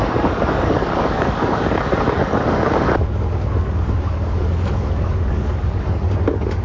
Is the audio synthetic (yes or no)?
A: yes